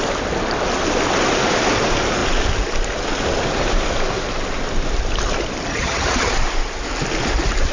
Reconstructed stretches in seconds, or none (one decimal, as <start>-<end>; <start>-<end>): 5.7-6.3